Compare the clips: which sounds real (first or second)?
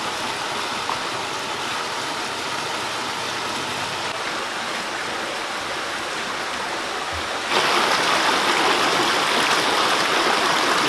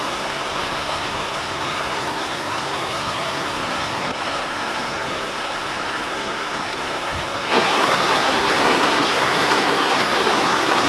first